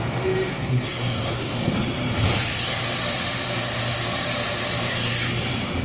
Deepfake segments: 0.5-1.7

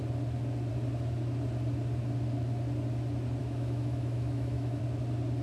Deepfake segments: 3.4-4.8

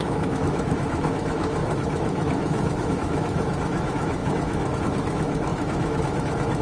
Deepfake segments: 0.0-6.6

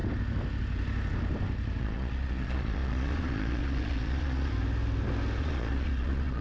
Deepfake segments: 1.8-4.5; 5.4-6.4

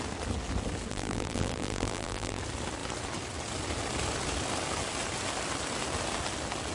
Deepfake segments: 0.9-2.4

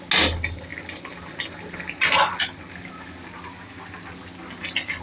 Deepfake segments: none

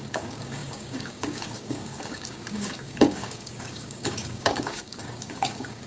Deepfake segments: 0.0-5.9